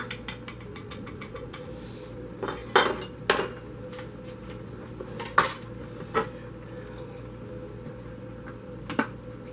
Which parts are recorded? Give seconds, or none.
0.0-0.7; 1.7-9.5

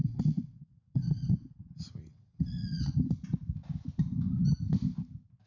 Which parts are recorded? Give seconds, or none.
1.7-2.1; 2.9-5.5

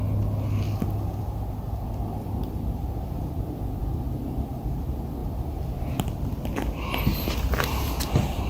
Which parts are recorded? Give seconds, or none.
0.0-8.5

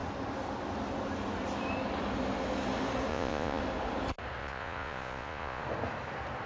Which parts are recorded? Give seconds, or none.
0.0-3.1; 3.6-4.4; 5.6-6.5